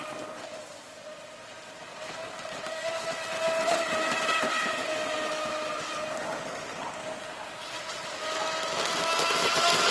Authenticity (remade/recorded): recorded